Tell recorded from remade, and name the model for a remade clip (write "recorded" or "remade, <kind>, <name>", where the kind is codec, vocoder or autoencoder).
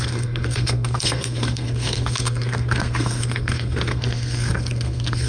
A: remade, codec, SNAC